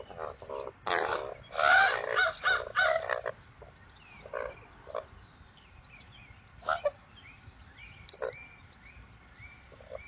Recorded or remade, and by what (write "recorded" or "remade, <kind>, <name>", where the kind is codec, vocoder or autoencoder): remade, vocoder, BigVGAN v2